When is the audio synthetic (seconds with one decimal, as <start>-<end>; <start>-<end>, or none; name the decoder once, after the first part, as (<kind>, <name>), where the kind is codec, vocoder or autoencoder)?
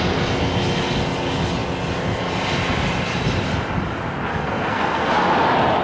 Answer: 4.3-5.1 (codec, SNAC)